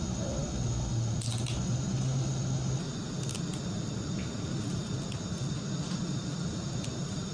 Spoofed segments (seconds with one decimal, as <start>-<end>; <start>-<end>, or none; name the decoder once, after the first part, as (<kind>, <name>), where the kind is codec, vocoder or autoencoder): none